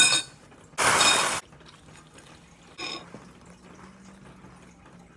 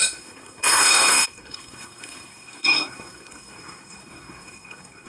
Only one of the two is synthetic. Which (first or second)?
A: second